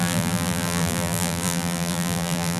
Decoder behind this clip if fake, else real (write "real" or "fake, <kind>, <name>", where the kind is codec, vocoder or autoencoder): fake, vocoder, BigVGAN v2